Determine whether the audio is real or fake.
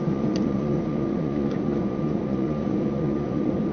fake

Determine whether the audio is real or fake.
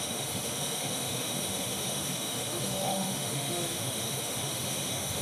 fake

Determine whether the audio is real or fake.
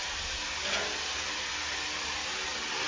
real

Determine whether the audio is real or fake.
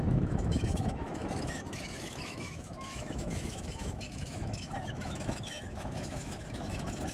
fake